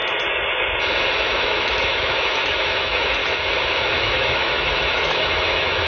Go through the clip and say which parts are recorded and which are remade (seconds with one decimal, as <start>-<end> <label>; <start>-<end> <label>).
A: 0.0-1.2 recorded; 1.2-3.2 remade; 3.2-3.8 recorded; 3.8-5.9 remade